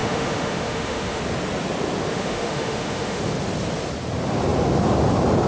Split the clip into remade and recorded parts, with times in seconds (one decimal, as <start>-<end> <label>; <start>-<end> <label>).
0.0-1.2 remade; 1.2-2.1 recorded; 2.1-3.2 remade; 3.2-5.5 recorded